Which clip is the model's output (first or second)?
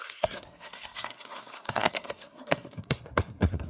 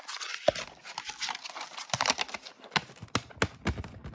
first